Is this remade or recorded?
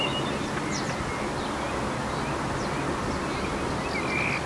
recorded